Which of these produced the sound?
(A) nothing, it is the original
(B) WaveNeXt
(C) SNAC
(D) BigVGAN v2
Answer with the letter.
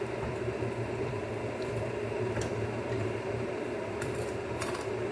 D